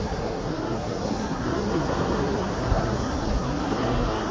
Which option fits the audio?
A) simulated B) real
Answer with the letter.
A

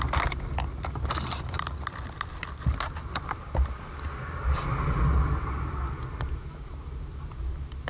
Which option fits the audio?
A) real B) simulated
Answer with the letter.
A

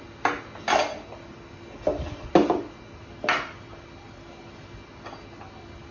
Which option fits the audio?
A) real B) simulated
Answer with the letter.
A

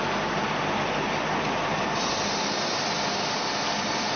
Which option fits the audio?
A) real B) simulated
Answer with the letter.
A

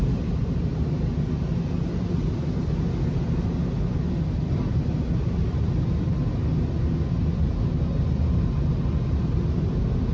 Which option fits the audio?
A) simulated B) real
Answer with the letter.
B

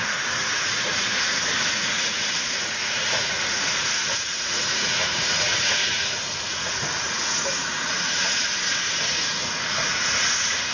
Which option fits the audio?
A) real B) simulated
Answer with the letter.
B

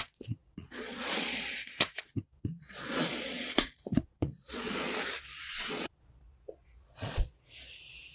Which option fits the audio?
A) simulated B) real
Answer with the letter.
A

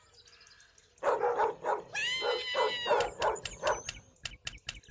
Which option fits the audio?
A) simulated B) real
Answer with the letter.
B